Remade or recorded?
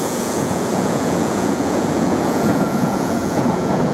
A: remade